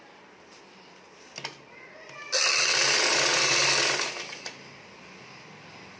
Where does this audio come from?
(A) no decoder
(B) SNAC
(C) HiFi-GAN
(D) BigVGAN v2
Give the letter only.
A